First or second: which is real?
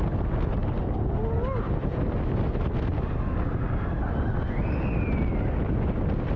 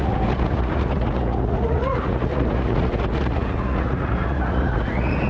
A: first